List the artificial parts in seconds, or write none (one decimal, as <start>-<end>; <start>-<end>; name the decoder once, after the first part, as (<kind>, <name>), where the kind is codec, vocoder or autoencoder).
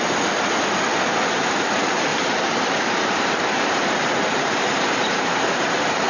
2.1-6.1 (vocoder, BigVGAN v2)